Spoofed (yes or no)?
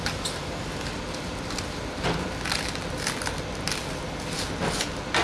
no